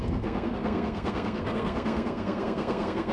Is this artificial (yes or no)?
yes